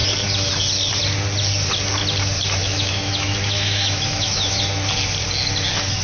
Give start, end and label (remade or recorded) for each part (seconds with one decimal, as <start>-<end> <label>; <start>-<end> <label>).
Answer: 0.0-2.6 recorded; 2.6-4.6 remade; 4.6-6.0 recorded

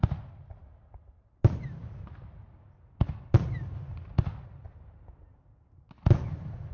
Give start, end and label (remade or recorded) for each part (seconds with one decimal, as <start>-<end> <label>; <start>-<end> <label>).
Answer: 0.0-6.7 recorded

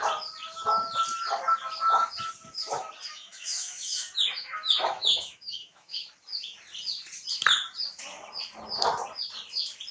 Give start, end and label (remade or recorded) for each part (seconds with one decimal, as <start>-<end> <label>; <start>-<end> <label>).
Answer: 0.0-3.1 recorded; 3.1-6.0 remade; 6.0-9.9 recorded

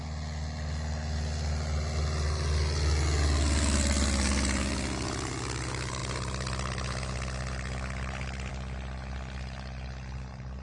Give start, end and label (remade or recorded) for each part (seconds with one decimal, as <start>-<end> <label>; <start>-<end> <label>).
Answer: 0.0-10.6 recorded

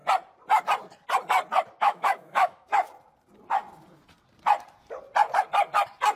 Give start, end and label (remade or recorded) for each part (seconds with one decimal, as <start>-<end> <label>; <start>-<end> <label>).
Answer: 0.0-1.8 recorded; 1.8-2.7 remade; 2.7-6.2 recorded

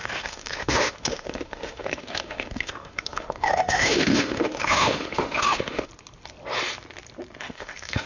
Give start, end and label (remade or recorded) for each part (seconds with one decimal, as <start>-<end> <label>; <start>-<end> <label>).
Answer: 0.0-5.9 remade; 5.9-7.5 recorded; 7.5-8.1 remade